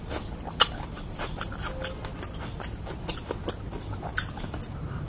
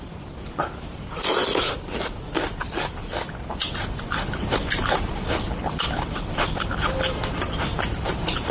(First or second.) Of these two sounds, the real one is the first